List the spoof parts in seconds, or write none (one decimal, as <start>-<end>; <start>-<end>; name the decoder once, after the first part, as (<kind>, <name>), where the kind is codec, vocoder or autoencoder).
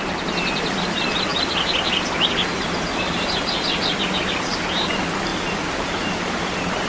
none